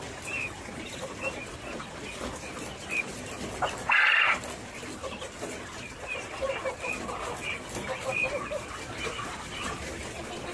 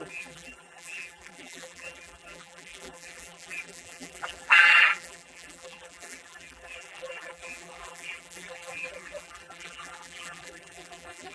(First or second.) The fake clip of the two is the second